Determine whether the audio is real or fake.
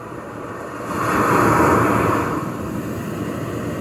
real